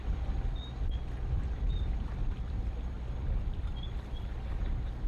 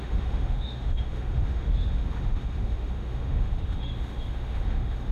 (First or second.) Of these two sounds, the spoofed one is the second